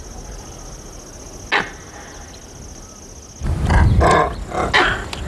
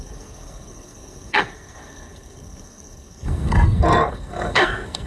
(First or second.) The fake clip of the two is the second